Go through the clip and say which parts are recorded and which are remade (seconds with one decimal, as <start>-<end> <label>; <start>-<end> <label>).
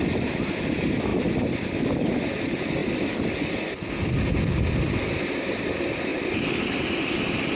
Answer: 0.0-7.5 recorded